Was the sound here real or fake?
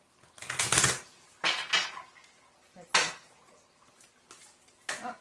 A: real